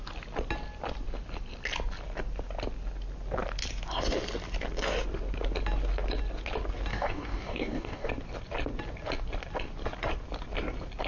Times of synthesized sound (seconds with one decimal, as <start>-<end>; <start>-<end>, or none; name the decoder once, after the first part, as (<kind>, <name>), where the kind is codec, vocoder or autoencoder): 6.9-8.1 (codec, DAC)